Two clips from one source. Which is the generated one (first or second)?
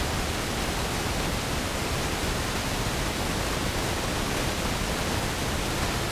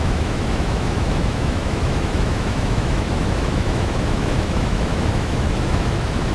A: second